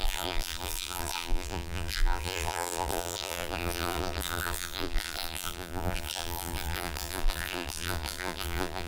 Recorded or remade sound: remade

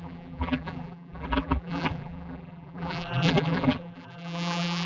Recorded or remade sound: remade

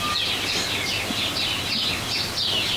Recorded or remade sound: recorded